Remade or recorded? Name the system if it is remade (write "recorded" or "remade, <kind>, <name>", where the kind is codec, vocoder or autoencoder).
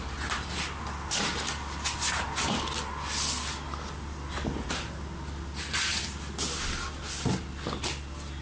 recorded